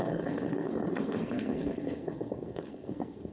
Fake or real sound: fake